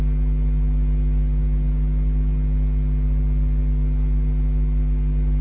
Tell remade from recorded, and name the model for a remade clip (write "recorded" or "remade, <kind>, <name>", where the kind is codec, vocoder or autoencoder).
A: recorded